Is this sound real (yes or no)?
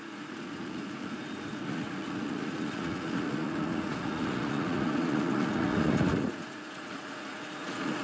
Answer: no